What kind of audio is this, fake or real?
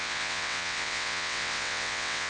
fake